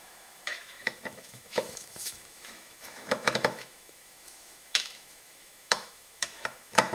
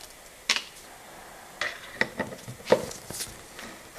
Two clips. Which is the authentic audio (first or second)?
second